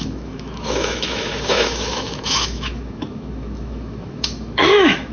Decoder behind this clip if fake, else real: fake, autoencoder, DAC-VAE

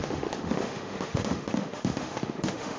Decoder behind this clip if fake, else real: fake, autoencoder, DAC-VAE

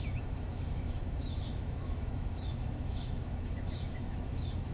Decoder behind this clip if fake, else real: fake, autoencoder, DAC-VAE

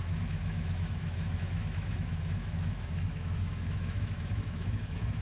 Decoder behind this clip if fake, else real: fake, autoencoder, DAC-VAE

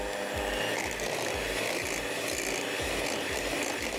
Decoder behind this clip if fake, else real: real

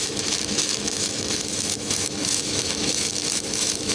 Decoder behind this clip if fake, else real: fake, autoencoder, DAC-VAE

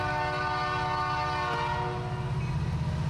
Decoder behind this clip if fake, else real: real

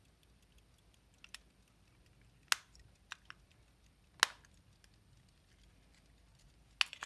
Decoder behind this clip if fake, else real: real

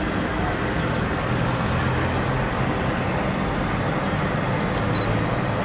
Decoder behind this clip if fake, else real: real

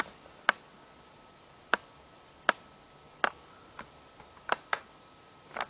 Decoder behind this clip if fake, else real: real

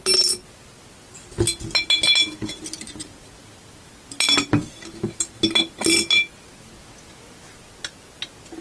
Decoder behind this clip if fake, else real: real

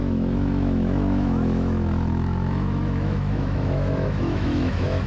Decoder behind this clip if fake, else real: fake, autoencoder, DAC-VAE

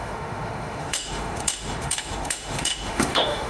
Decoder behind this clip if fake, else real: fake, autoencoder, DAC-VAE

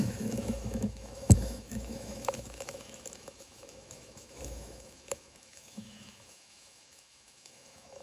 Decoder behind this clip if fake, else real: fake, autoencoder, DAC-VAE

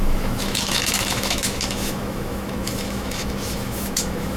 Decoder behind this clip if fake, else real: fake, autoencoder, DAC-VAE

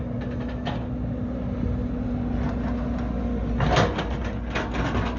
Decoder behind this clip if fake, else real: real